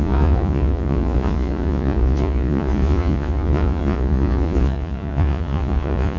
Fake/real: fake